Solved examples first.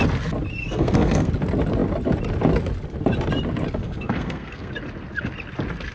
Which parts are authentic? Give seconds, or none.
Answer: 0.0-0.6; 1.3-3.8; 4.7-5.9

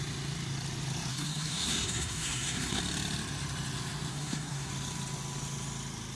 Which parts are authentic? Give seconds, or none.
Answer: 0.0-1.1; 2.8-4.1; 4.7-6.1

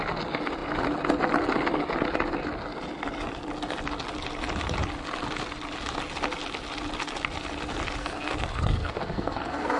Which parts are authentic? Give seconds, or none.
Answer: 0.0-8.0

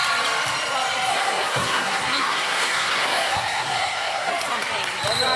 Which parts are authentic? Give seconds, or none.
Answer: 0.0-1.1; 4.3-5.4

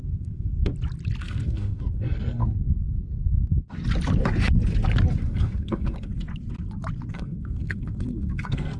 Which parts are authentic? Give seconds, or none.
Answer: 0.7-1.2; 2.4-5.2; 6.1-7.1